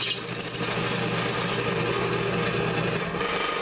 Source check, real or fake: real